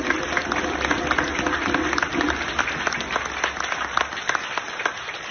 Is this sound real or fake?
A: fake